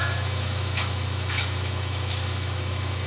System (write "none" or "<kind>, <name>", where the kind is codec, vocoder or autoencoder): autoencoder, DAC-VAE